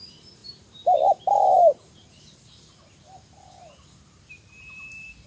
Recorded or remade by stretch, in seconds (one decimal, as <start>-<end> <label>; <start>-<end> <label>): 0.0-0.4 recorded; 0.4-2.1 remade; 2.1-5.3 recorded